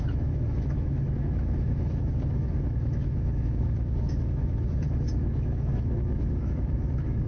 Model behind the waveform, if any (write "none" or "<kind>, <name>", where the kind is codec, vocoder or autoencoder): autoencoder, DAC-VAE